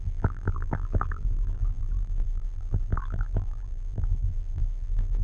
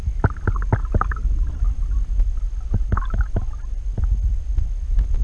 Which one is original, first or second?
second